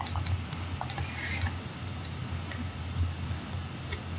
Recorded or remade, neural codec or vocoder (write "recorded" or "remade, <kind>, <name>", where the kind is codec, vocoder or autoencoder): recorded